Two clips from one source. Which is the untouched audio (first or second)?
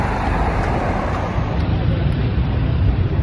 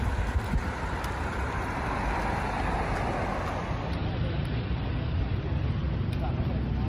second